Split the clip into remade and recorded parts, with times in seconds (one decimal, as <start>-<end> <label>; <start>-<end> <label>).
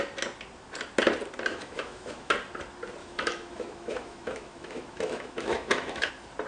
0.0-1.5 recorded; 1.5-2.3 remade; 2.3-3.0 recorded; 3.0-6.1 remade; 6.1-6.5 recorded